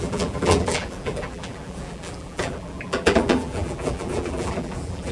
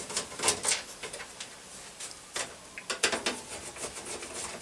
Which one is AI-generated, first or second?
first